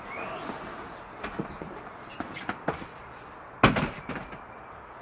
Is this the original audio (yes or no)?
yes